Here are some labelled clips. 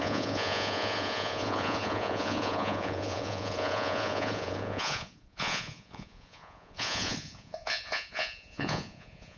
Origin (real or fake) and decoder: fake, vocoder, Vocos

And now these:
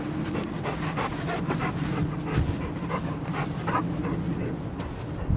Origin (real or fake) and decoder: real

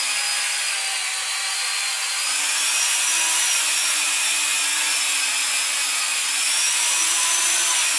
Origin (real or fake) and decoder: fake, vocoder, Vocos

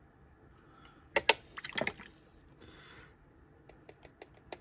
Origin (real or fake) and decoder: real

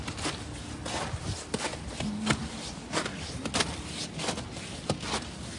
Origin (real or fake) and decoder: real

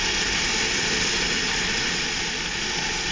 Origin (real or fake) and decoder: real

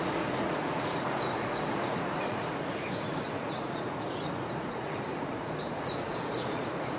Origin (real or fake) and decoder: fake, vocoder, Vocos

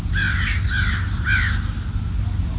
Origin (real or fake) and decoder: real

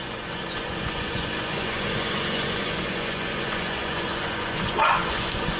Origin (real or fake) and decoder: fake, vocoder, Vocos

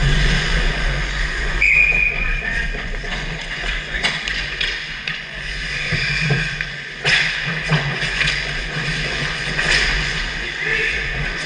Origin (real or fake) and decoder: fake, vocoder, Vocos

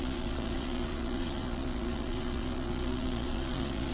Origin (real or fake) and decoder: fake, vocoder, Vocos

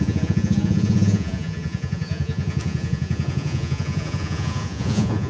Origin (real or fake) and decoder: fake, vocoder, Vocos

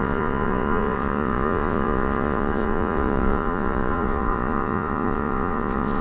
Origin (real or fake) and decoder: fake, vocoder, Vocos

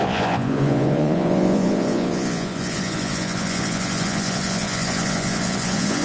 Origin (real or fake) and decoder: fake, vocoder, Vocos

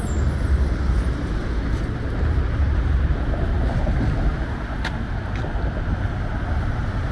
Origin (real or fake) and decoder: real